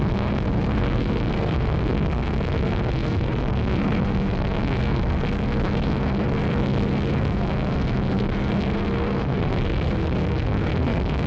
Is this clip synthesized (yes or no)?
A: yes